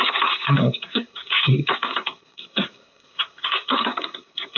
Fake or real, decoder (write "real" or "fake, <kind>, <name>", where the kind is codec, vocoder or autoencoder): fake, codec, SNAC